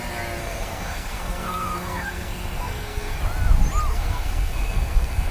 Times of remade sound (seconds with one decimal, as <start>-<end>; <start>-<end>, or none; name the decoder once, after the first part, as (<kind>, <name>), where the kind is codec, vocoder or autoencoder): 0.4-3.2 (codec, SNAC); 3.9-5.3

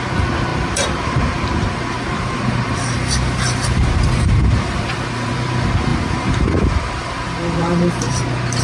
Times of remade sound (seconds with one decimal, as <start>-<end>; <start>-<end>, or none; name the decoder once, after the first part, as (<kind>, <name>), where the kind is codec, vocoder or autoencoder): 0.5-5.3 (vocoder, BigVGAN v2); 5.9-8.6